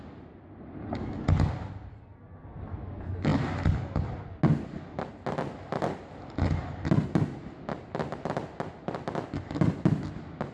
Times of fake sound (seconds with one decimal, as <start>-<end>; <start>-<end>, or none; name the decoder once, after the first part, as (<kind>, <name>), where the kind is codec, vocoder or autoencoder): none